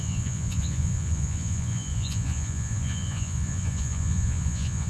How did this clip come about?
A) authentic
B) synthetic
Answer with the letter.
B